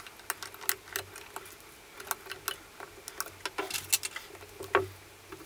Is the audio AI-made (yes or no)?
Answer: no